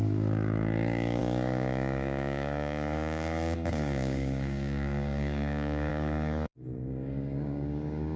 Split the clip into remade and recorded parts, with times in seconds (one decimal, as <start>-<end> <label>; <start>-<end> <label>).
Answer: 0.0-8.2 remade

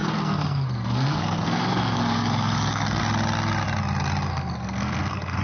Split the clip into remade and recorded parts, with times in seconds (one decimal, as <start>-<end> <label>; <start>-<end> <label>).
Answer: 0.0-3.0 remade; 3.0-4.3 recorded; 4.3-5.4 remade

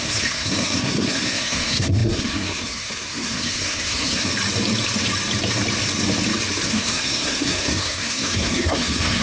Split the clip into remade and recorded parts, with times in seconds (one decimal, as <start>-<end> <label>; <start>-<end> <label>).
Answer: 0.0-4.3 remade; 4.3-6.7 recorded; 6.7-9.2 remade

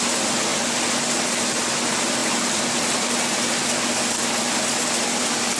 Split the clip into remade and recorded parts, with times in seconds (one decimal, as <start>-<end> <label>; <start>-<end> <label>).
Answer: 0.0-2.2 recorded; 2.2-3.1 remade; 3.1-5.6 recorded